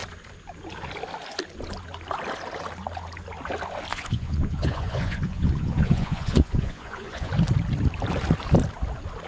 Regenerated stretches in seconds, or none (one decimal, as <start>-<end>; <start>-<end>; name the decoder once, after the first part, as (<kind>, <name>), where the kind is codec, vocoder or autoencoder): 3.9-7.3 (vocoder, Vocos)